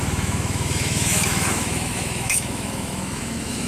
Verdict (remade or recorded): remade